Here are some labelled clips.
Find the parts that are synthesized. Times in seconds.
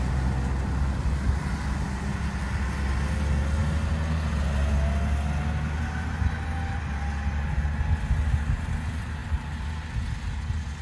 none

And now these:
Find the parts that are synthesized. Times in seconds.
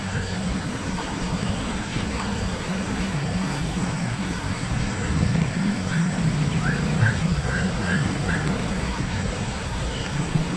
0.0-6.2 (codec, SNAC); 7.0-10.6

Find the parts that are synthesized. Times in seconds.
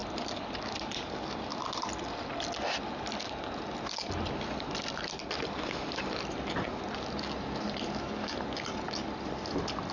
none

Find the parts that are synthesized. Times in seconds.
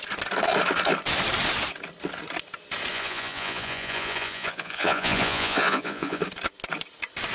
2.9-6.2 (vocoder, Vocos)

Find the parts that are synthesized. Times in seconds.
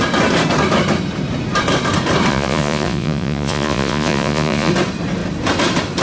2.3-4.7 (vocoder, Vocos)